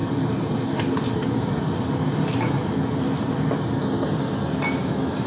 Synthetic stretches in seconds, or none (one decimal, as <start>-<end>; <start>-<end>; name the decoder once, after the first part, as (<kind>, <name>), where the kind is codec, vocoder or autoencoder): none